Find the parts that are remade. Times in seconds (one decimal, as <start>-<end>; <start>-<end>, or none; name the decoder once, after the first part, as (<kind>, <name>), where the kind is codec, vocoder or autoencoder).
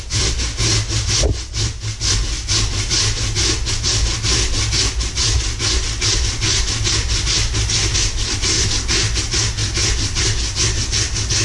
none